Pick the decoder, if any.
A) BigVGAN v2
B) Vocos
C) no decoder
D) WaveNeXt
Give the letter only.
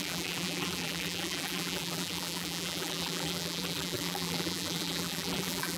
A